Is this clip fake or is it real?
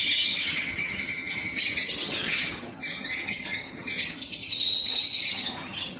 fake